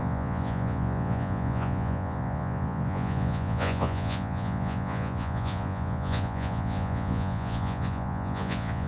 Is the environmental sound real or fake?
fake